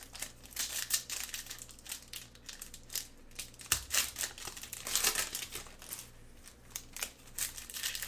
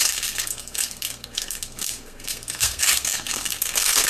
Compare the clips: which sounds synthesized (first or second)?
second